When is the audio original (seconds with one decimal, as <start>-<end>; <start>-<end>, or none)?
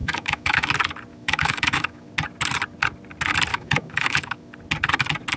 0.7-1.1; 2.1-3.5; 4.5-5.4